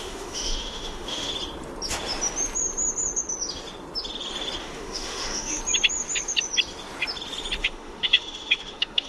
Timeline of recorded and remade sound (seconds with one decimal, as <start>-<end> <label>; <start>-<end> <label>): 0.0-1.3 remade; 1.3-4.6 recorded; 4.6-5.6 remade; 5.6-7.6 recorded; 7.6-9.1 remade